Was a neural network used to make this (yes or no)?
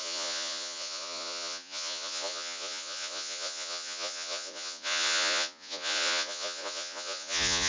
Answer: yes